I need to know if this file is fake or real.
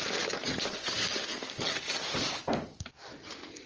real